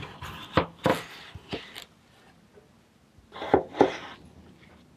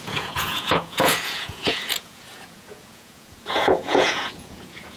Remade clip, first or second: second